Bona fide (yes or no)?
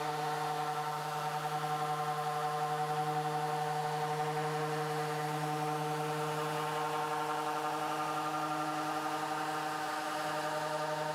yes